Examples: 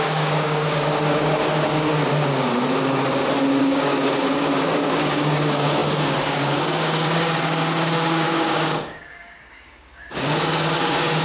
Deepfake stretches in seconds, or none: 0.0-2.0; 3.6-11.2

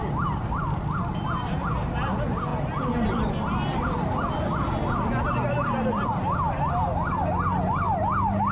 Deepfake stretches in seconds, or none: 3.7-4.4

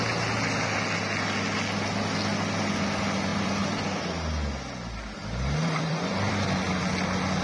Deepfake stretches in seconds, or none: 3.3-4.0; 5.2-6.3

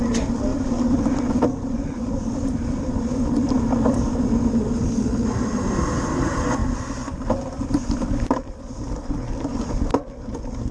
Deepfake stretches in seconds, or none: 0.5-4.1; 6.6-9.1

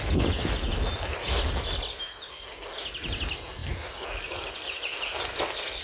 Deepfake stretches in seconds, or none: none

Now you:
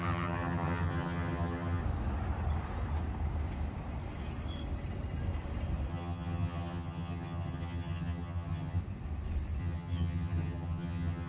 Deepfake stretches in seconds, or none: 0.0-1.8; 5.9-8.8; 9.6-11.3

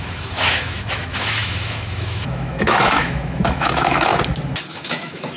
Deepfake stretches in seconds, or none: 0.0-4.1; 4.7-5.4

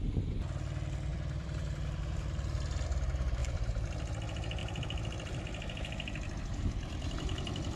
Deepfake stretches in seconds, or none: 1.1-2.8; 3.4-3.9; 4.6-5.4